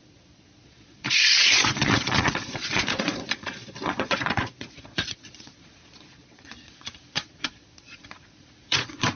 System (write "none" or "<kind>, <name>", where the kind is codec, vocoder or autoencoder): vocoder, Vocos